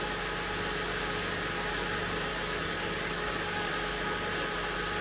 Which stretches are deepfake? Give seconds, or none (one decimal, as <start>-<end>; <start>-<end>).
2.3-3.7